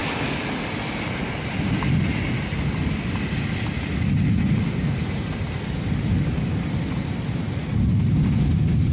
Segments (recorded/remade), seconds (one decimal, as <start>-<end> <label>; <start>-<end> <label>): 0.0-8.9 recorded